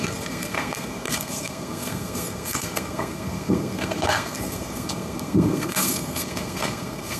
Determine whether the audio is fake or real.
fake